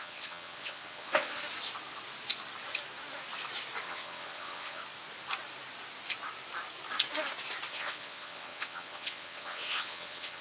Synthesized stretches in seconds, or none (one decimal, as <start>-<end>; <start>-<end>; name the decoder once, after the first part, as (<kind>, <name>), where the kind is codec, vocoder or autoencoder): 0.0-1.4 (vocoder, WaveNeXt); 3.8-4.8; 7.7-10.4